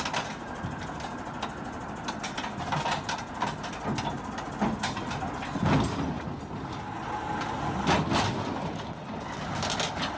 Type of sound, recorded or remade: recorded